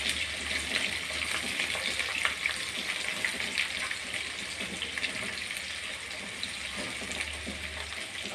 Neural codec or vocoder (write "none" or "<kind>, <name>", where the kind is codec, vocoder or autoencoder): none